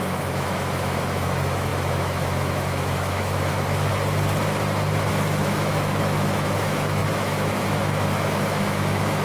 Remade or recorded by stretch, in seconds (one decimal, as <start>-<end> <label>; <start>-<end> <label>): 0.0-3.9 remade; 3.9-5.1 recorded; 5.1-9.2 remade